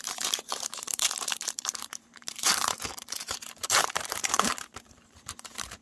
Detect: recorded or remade remade